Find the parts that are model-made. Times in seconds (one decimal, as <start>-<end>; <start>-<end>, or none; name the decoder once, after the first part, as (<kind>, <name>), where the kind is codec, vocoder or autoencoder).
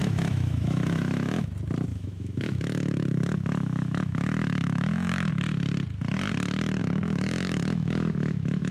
0.0-1.5 (autoencoder, DAC-VAE); 1.9-5.3; 6.8-8.7